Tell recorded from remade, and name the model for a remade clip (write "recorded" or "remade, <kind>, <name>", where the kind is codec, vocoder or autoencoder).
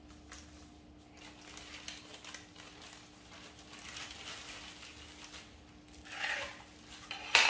recorded